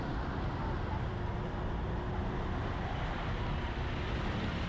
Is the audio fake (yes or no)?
yes